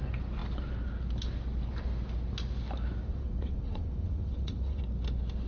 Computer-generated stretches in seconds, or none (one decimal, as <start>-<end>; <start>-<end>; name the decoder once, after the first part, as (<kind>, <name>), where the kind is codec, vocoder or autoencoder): 3.1-4.8 (vocoder, WaveNeXt)